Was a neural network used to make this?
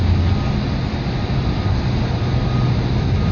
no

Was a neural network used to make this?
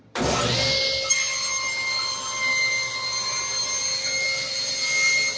no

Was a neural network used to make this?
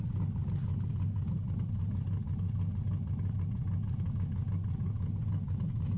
no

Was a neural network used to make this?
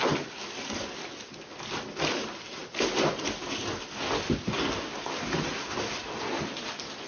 no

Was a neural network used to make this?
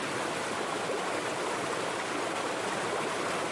no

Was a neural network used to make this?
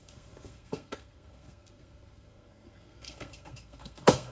yes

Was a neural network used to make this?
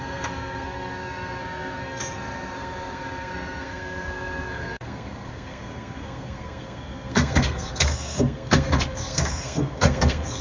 yes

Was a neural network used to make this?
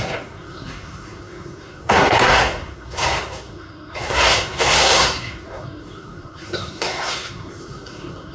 yes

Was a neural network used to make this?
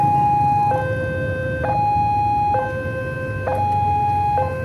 no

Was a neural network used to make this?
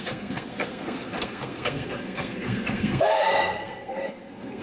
yes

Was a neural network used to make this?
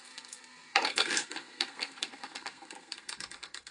yes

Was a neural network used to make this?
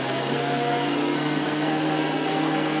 yes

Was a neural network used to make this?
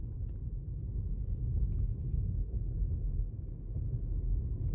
no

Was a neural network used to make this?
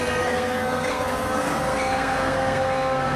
yes